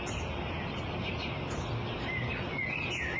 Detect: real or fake real